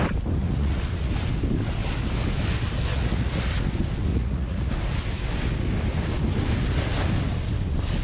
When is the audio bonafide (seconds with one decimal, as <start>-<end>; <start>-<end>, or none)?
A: 0.0-0.4; 1.1-2.9; 3.5-4.1; 4.7-8.0

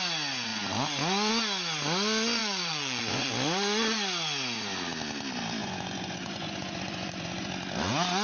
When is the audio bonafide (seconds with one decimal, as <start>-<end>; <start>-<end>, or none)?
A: 0.0-2.4; 3.3-5.6; 7.5-8.2

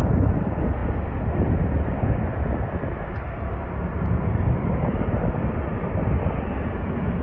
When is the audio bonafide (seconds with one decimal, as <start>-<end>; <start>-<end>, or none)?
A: 0.0-7.2

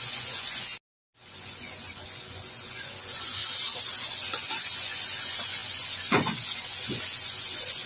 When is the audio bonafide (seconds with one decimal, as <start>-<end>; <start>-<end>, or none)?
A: 0.7-1.2; 3.4-4.0

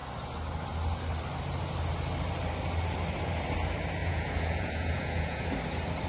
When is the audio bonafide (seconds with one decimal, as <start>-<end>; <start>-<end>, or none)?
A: 0.0-4.0; 5.5-6.1

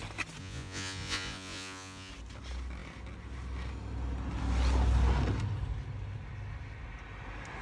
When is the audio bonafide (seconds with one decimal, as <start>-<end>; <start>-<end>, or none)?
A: 0.0-0.4; 2.1-7.6

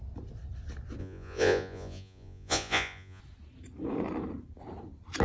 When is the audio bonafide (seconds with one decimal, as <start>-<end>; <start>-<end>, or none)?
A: 0.0-1.0; 3.2-5.2

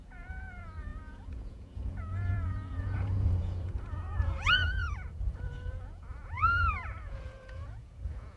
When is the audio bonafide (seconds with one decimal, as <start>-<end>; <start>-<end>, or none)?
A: none